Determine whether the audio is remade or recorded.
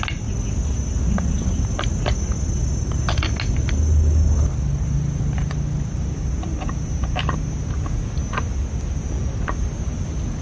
recorded